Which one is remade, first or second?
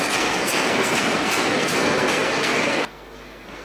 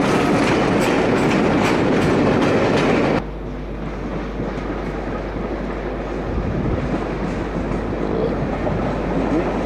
first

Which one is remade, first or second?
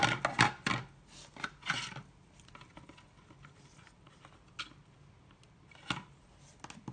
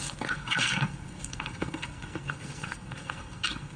second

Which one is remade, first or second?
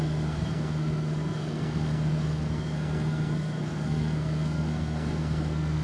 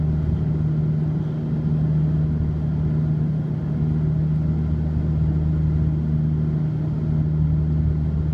first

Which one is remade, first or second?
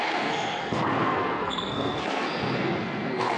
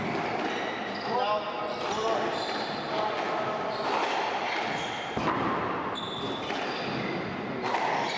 first